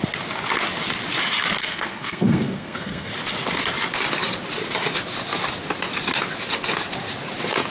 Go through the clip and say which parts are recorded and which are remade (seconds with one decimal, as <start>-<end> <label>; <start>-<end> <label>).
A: 0.0-1.6 recorded; 1.6-3.1 remade; 3.1-7.7 recorded